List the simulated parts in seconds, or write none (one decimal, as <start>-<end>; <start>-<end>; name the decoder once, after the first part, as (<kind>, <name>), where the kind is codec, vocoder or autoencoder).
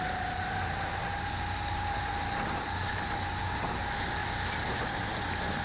1.7-3.1 (vocoder, BigVGAN v2); 4.2-5.1